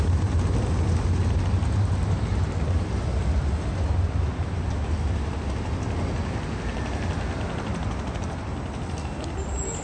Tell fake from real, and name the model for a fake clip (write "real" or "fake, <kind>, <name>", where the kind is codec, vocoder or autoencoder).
real